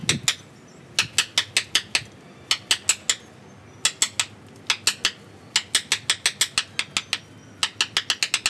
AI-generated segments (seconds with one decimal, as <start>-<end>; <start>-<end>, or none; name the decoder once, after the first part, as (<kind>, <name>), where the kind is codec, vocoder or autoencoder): none